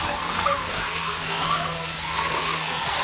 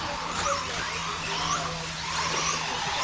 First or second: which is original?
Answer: second